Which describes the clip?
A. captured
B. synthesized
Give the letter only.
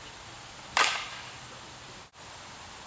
A